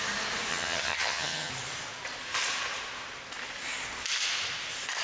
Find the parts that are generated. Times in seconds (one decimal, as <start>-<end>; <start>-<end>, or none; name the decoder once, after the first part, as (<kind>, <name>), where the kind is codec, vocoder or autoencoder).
0.5-1.5 (vocoder, HiFi-GAN)